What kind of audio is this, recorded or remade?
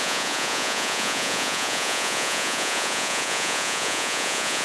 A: remade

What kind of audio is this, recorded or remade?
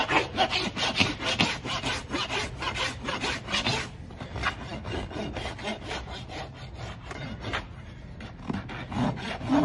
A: recorded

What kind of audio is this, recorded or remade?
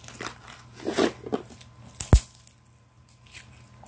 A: recorded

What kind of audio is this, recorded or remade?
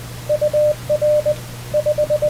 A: recorded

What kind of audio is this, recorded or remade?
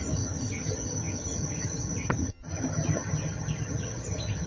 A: remade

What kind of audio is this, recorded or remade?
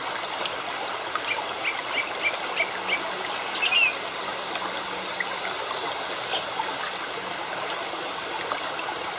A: recorded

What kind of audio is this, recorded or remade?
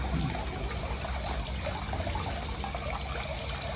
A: recorded